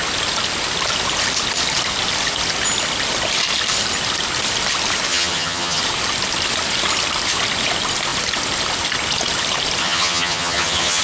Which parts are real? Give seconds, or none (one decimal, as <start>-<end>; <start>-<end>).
0.0-5.1; 5.8-9.8